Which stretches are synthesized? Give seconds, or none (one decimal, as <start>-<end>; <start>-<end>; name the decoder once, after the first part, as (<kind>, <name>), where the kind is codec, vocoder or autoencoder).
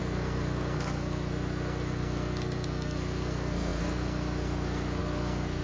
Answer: 0.0-5.6 (codec, SNAC)